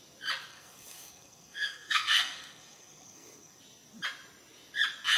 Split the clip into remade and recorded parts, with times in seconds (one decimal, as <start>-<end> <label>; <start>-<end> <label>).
0.0-0.5 recorded; 0.5-3.6 remade; 3.6-5.2 recorded